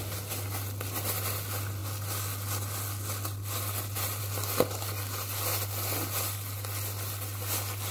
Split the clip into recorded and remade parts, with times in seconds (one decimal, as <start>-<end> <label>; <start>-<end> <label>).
0.0-7.9 recorded